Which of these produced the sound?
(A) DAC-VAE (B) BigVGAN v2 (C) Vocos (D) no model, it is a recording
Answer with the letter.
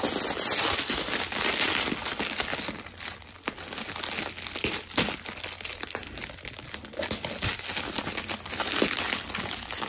D